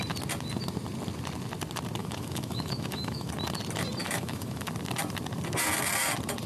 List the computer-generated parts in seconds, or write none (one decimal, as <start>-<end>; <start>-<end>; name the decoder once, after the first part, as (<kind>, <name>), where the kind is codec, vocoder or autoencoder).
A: 2.0-3.3 (autoencoder, DAC-VAE); 4.0-4.7